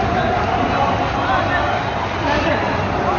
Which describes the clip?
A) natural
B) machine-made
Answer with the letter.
A